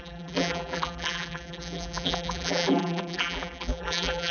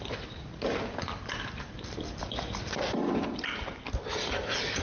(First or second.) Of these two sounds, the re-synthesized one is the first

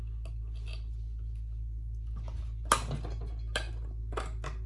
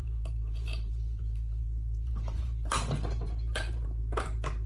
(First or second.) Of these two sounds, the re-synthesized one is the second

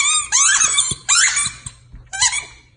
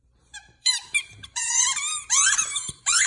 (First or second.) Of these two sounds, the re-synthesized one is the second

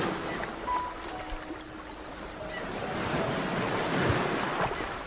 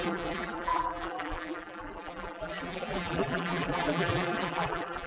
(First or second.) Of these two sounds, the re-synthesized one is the second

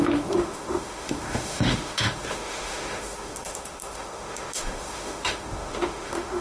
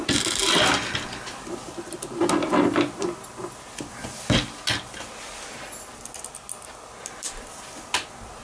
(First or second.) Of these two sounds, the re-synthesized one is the first